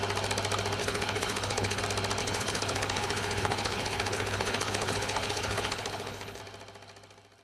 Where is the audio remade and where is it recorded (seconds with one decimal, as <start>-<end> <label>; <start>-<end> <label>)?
0.0-0.8 recorded; 0.8-1.8 remade; 1.8-2.2 recorded; 2.2-6.4 remade; 6.4-7.4 recorded